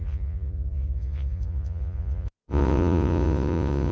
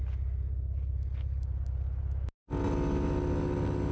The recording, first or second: second